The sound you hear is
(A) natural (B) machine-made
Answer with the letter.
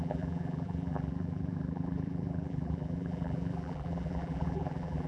B